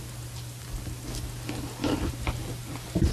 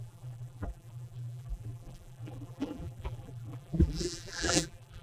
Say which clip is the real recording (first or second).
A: first